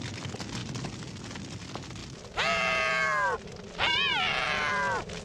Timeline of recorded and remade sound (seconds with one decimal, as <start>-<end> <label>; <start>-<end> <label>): 0.0-5.2 recorded